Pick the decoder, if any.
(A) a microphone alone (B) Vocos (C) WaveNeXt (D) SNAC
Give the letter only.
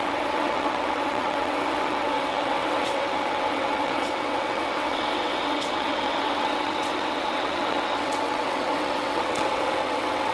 C